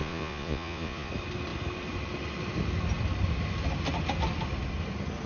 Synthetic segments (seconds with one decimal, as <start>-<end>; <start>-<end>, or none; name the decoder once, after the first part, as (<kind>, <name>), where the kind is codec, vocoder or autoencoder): 0.0-1.1 (vocoder, Vocos)